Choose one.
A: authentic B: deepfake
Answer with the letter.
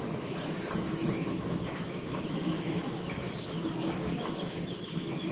B